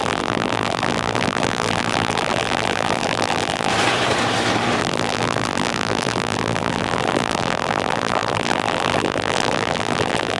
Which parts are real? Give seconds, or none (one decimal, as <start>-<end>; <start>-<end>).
3.7-4.8